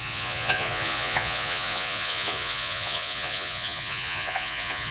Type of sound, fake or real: fake